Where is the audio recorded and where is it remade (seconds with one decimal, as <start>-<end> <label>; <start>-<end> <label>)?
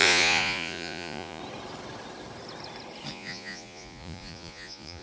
0.0-1.4 remade; 1.4-3.1 recorded; 3.1-5.0 remade